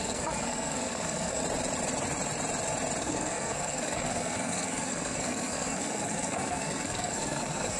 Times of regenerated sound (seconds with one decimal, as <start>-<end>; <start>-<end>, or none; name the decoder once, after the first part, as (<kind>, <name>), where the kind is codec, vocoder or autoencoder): 0.0-1.4 (codec, SNAC); 3.0-7.8